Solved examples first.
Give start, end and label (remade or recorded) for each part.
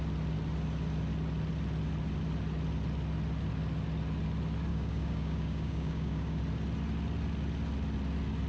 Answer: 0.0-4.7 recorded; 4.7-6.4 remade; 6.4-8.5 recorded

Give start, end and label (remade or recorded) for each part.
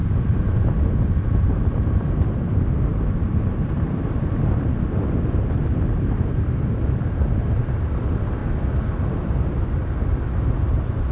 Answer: 0.0-1.4 recorded; 1.4-2.9 remade; 2.9-5.9 recorded; 5.9-8.4 remade; 8.4-10.4 recorded; 10.4-11.1 remade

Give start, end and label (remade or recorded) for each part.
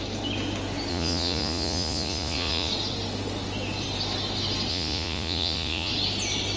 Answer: 0.0-0.9 recorded; 0.9-2.7 remade; 2.7-4.7 recorded; 4.7-5.9 remade; 5.9-6.6 recorded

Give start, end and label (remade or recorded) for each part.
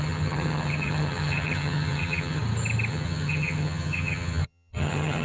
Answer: 0.0-2.4 remade; 2.4-2.9 recorded; 2.9-5.2 remade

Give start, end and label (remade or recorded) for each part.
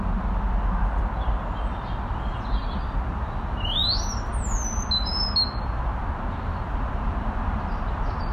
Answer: 0.0-8.3 recorded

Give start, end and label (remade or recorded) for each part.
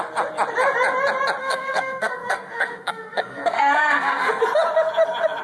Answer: 0.0-1.4 recorded; 1.4-4.4 remade; 4.4-5.4 recorded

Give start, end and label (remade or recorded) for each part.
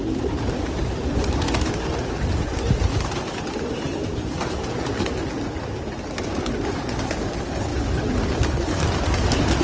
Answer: 0.0-9.6 recorded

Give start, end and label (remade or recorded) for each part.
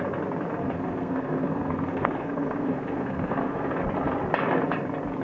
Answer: 0.0-0.6 recorded; 0.6-3.7 remade; 3.7-5.2 recorded